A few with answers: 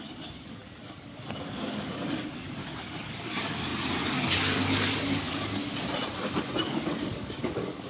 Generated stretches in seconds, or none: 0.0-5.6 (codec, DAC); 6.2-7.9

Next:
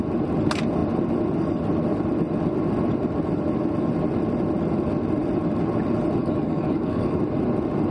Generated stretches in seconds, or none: 6.2-7.2 (codec, DAC)

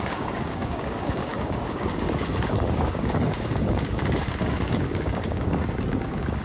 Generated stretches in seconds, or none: 0.0-6.4 (codec, DAC)

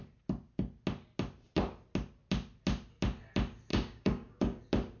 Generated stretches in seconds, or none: 3.7-4.6 (codec, DAC)

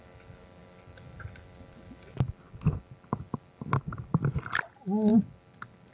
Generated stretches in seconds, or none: none

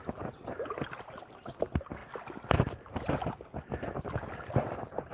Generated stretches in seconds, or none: none